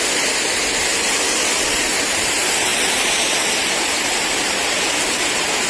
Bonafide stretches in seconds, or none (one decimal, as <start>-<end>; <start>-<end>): 0.0-5.7